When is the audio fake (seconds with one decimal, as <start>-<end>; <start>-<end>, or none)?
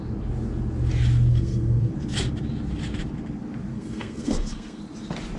1.3-1.9; 3.7-4.8